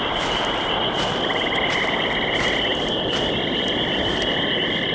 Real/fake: real